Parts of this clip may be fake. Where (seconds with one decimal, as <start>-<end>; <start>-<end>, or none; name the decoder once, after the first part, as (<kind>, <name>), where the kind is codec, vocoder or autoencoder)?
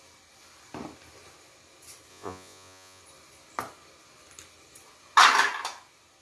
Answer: 2.1-3.0 (vocoder, Vocos)